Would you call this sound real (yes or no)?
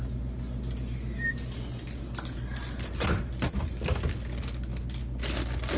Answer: yes